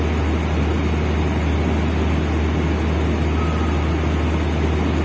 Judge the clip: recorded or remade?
recorded